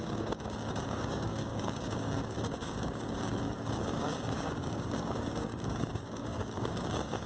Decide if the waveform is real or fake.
fake